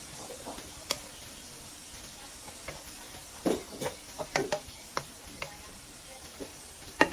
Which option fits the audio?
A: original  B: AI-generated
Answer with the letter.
B